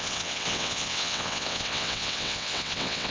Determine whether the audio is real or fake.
fake